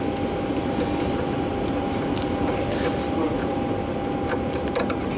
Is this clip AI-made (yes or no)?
no